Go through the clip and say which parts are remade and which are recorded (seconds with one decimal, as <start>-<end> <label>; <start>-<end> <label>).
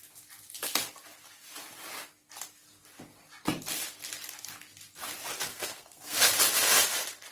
0.0-5.5 recorded; 5.5-6.3 remade; 6.3-7.3 recorded